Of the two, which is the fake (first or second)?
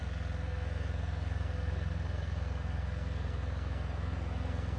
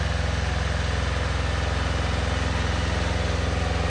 first